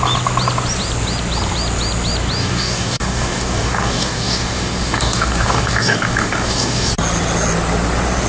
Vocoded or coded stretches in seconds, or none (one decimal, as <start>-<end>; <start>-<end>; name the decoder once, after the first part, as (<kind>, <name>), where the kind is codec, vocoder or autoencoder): 2.4-6.9 (codec, DAC)